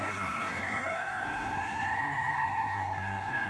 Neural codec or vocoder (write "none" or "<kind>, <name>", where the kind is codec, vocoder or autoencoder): codec, SNAC